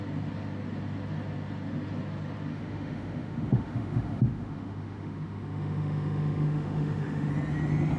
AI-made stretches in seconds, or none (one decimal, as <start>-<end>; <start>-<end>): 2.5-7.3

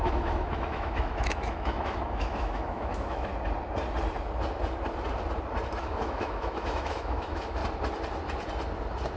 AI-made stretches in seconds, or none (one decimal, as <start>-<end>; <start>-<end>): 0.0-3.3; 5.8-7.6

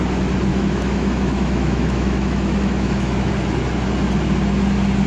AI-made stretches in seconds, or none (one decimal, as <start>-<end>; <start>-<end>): 0.5-3.3

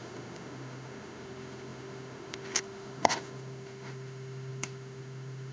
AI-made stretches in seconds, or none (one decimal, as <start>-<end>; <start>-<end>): 0.0-5.5

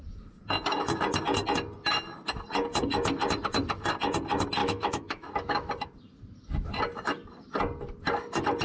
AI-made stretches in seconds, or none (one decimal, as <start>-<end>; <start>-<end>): 4.6-5.7

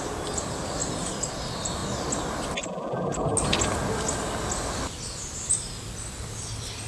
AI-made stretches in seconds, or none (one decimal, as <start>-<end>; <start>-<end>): none